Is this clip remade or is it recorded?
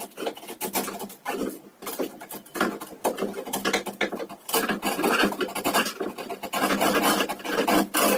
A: recorded